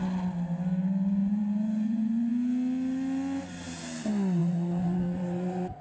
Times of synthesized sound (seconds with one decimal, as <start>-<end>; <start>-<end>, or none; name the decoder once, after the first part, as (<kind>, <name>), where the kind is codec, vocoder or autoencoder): 1.2-2.3 (vocoder, Vocos); 4.4-5.8